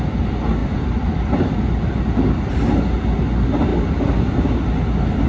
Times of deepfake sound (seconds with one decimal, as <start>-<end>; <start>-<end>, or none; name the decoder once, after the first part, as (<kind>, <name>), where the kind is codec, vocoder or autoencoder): 0.6-2.4 (vocoder, BigVGAN v2)